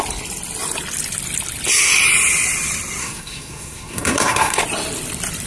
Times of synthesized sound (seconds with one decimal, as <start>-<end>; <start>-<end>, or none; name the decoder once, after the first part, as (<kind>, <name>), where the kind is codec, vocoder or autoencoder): 3.0-4.6 (codec, SNAC)